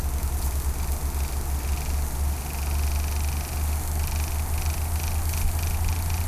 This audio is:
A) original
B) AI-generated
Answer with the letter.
A